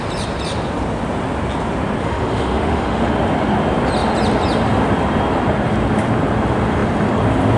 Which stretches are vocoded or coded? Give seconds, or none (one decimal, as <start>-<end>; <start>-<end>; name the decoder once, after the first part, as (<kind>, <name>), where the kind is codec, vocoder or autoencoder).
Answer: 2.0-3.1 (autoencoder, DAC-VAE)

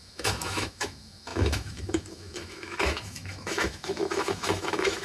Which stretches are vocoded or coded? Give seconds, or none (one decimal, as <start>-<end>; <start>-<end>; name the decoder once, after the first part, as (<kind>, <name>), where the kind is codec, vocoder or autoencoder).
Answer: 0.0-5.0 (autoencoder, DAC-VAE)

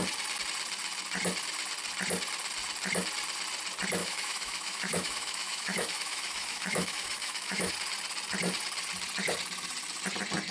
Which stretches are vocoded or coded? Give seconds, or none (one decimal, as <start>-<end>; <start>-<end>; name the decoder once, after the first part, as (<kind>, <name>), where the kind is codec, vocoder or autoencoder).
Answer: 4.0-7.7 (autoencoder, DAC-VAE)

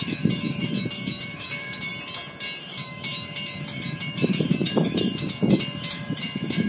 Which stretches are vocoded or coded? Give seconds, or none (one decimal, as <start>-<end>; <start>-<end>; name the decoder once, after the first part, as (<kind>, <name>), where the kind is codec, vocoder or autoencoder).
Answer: 0.0-1.9 (autoencoder, DAC-VAE); 2.6-6.7

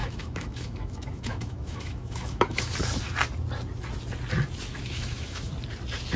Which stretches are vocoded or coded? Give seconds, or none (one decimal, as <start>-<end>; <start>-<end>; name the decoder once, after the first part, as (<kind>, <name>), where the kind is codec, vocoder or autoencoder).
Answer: 0.0-2.7 (autoencoder, DAC-VAE); 4.8-5.5

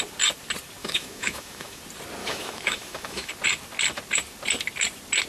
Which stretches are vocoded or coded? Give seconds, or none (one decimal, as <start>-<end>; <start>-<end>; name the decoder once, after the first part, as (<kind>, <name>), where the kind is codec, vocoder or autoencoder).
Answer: 0.8-1.8 (autoencoder, DAC-VAE); 2.2-3.3

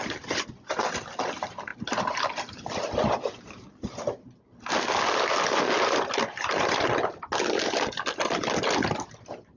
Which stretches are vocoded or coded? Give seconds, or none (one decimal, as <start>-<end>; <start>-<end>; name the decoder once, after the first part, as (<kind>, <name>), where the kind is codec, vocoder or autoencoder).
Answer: none